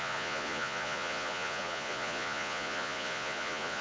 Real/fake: fake